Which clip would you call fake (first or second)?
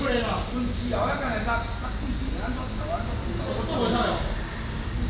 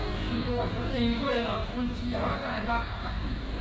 second